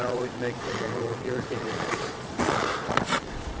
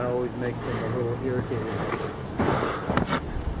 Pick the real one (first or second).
second